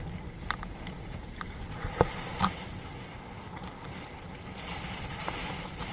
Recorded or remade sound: recorded